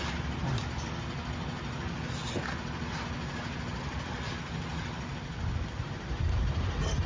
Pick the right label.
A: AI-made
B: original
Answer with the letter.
B